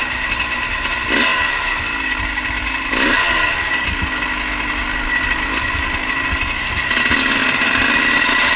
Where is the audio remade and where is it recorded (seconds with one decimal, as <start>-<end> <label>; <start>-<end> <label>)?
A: 0.0-8.6 recorded